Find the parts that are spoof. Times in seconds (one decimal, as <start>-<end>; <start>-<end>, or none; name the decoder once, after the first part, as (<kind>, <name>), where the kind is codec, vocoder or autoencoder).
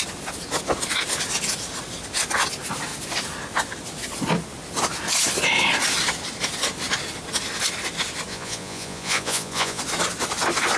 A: 8.3-9.8 (vocoder, Vocos)